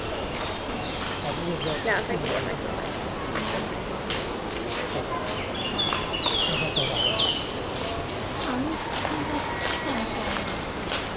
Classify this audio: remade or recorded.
recorded